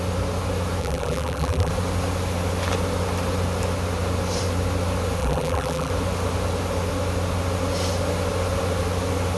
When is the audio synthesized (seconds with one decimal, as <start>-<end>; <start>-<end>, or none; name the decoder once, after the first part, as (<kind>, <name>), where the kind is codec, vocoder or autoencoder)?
0.8-1.7 (vocoder, BigVGAN v2); 5.2-5.9